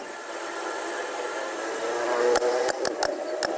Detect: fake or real real